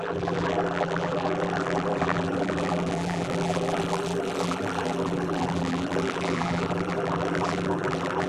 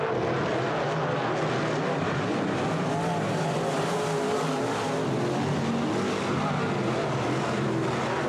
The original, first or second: second